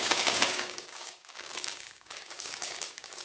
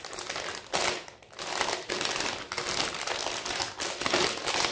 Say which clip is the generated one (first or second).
first